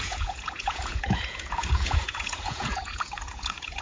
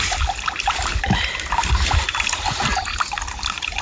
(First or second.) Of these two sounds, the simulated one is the first